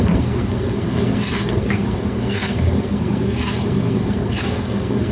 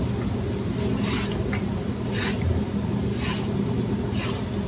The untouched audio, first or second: second